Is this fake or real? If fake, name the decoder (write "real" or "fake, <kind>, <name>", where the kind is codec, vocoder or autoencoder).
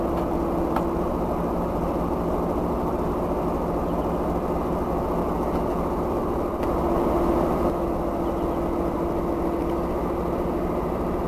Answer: real